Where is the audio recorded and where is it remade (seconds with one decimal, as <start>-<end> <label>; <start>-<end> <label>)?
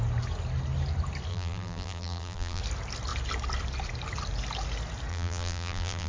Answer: 0.0-1.3 recorded; 1.3-2.6 remade; 2.6-5.1 recorded; 5.1-6.1 remade